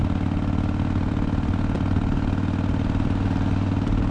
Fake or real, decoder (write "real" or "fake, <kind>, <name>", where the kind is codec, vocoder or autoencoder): real